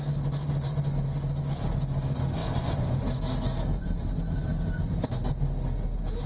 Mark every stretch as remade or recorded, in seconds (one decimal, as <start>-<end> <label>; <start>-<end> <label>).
0.0-2.4 recorded; 2.4-3.2 remade; 3.2-3.7 recorded; 3.7-5.1 remade; 5.1-6.3 recorded